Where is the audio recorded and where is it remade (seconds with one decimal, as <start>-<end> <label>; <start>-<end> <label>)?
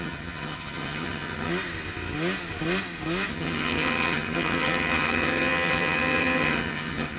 0.0-1.5 remade; 1.5-3.3 recorded; 3.3-7.2 remade